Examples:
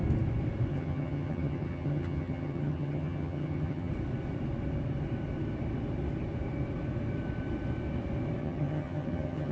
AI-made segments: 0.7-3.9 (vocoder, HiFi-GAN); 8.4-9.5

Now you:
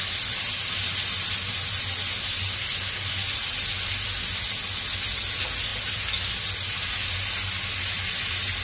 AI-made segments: none

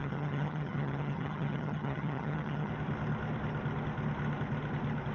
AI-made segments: 0.0-2.7 (vocoder, HiFi-GAN)

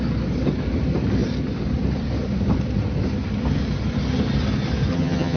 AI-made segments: 4.9-5.4 (vocoder, HiFi-GAN)

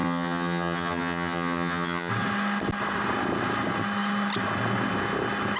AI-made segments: 0.0-2.1 (vocoder, HiFi-GAN)

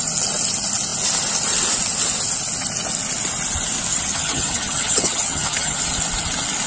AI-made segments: 3.9-5.8 (vocoder, HiFi-GAN)

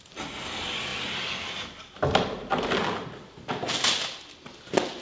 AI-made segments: none

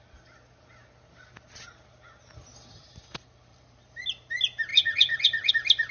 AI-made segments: 4.7-5.5 (vocoder, HiFi-GAN)